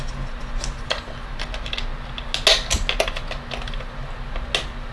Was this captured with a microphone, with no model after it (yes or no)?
yes